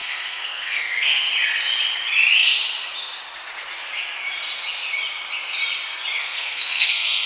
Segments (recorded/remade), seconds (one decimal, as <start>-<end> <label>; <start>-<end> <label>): 0.0-1.3 remade; 1.3-6.2 recorded; 6.2-7.3 remade